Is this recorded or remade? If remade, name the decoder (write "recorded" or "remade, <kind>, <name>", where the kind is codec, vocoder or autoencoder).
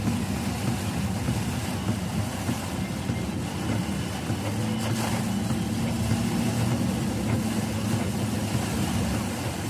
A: recorded